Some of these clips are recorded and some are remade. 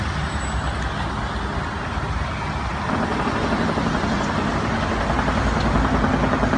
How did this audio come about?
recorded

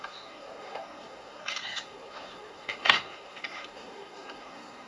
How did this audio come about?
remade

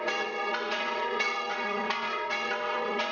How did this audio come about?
remade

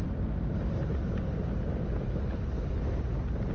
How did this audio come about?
recorded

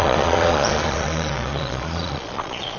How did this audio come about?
remade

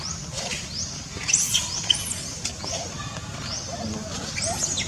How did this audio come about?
recorded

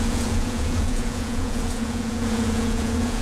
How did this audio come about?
remade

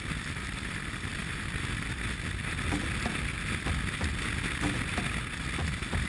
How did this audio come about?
recorded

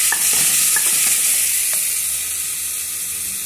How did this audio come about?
recorded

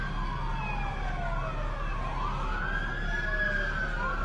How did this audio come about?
recorded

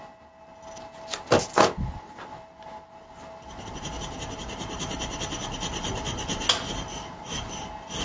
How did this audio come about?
recorded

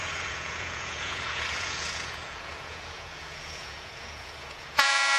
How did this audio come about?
remade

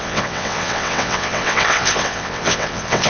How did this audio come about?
remade